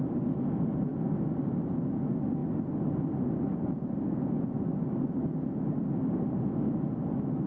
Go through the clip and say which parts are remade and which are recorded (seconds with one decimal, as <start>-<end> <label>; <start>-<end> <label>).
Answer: 0.0-7.5 recorded

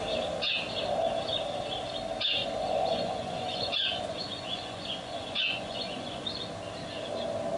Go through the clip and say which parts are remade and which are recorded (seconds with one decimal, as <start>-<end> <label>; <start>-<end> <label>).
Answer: 0.0-2.4 recorded; 2.4-6.2 remade; 6.2-7.6 recorded

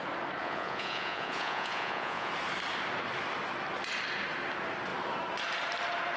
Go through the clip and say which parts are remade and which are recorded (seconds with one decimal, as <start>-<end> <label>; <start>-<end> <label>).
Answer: 0.0-0.4 recorded; 0.4-2.3 remade; 2.3-6.2 recorded

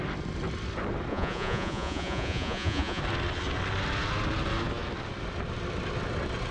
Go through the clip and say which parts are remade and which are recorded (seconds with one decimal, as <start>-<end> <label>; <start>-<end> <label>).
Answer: 0.0-1.1 recorded; 1.1-3.0 remade; 3.0-6.5 recorded

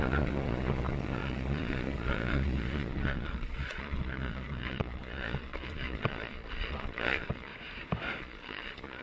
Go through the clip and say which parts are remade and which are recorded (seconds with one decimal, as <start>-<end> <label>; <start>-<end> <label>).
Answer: 0.0-7.5 remade; 7.5-8.2 recorded; 8.2-9.0 remade

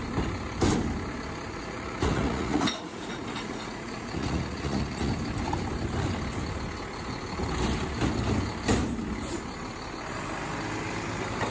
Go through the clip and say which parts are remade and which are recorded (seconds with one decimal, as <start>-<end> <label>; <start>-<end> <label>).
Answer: 0.0-1.5 recorded; 1.5-5.1 remade; 5.1-11.5 recorded

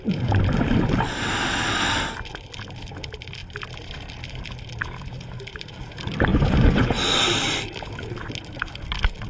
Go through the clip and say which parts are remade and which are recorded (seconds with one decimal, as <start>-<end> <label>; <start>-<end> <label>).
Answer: 0.0-6.3 recorded; 6.3-7.0 remade; 7.0-9.3 recorded